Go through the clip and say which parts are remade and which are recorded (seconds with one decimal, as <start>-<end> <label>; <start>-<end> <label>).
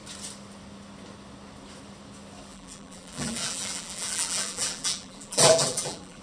0.0-2.5 recorded; 2.5-6.2 remade